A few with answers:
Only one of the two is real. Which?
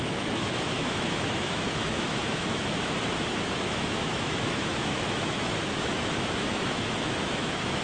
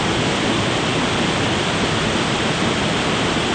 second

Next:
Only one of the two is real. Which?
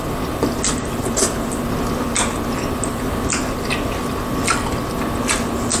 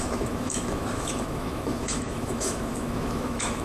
first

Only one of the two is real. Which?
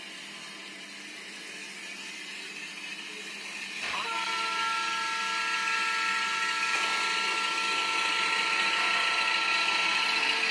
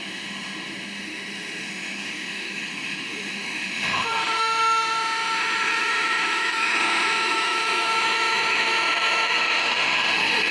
first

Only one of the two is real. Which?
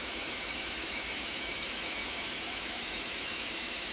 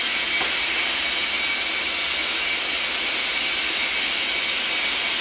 second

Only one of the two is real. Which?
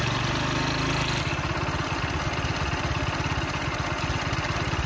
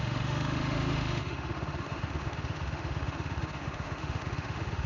first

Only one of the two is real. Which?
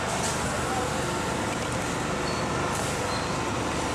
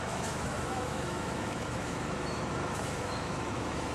first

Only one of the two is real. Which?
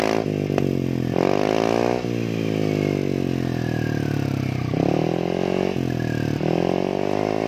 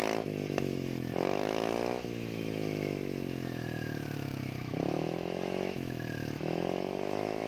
first